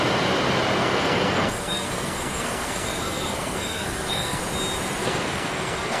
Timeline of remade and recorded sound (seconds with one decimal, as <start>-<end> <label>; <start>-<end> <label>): 0.0-0.8 recorded; 0.8-4.4 remade; 4.4-5.0 recorded; 5.0-6.0 remade